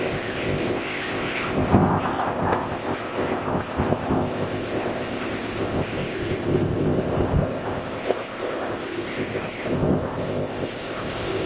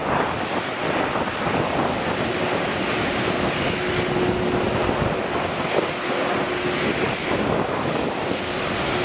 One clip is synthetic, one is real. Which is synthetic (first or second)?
first